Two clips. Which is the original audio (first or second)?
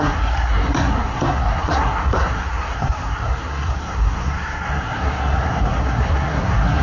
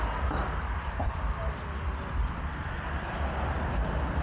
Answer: second